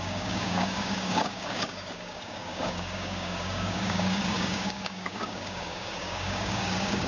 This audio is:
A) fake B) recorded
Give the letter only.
A